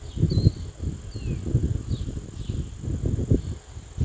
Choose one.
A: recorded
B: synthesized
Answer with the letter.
A